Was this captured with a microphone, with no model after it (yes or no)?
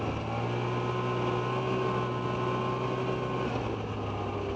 yes